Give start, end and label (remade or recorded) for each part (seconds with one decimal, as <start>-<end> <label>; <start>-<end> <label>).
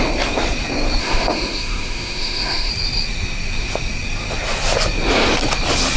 0.0-1.0 recorded; 1.0-2.7 remade; 2.7-6.0 recorded